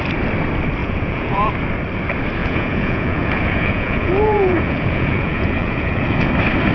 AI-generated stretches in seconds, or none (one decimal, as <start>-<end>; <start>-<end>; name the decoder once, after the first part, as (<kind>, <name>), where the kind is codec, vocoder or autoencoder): 0.8-1.5 (vocoder, Vocos); 2.4-6.3